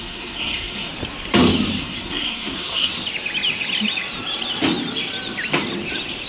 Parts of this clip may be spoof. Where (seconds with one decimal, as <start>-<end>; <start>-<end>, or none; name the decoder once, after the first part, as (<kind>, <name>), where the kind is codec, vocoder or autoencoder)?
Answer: 0.0-0.9 (codec, SNAC); 1.8-2.9